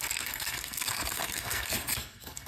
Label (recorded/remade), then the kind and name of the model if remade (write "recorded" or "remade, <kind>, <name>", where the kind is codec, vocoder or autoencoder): remade, codec, SNAC